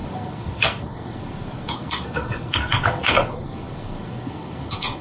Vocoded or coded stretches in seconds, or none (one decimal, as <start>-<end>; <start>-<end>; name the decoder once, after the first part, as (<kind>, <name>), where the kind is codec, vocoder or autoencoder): 0.0-5.0 (codec, SNAC)